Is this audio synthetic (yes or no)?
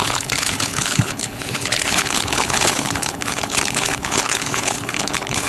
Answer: yes